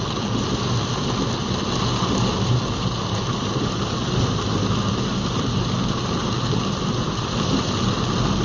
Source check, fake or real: real